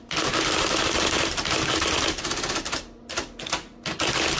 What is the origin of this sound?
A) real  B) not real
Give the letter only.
A